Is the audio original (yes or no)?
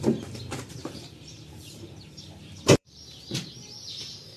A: no